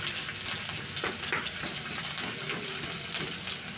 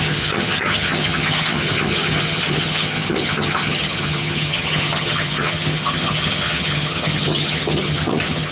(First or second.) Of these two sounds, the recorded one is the first